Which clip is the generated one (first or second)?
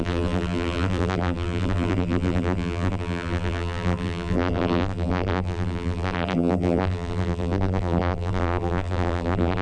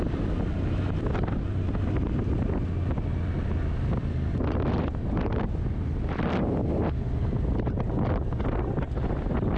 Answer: first